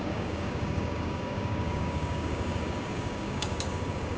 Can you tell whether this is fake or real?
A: fake